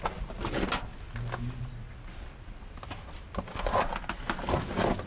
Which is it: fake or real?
real